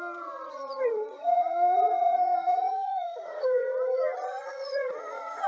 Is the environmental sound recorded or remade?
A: remade